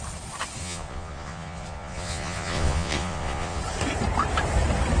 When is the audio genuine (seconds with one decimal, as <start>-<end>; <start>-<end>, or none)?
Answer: 0.0-0.6; 3.6-5.0